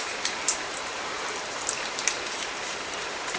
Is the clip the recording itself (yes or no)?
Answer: no